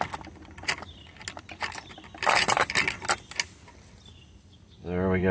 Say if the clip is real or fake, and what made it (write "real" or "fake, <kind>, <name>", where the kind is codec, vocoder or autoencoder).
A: real